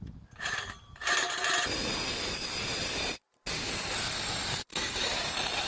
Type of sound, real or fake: real